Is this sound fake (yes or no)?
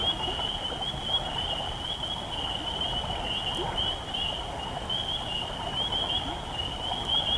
no